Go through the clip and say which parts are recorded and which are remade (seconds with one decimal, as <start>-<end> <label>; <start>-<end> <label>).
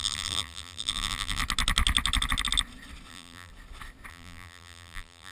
0.0-1.4 remade; 1.4-3.1 recorded; 3.1-3.5 remade; 3.5-4.1 recorded; 4.1-5.3 remade